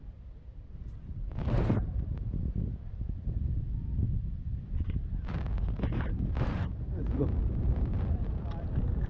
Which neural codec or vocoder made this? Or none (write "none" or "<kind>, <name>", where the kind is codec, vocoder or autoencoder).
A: vocoder, BigVGAN v2